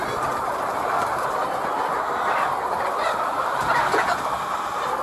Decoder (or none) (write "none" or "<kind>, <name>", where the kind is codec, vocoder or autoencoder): none